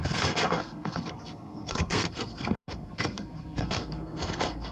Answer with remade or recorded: remade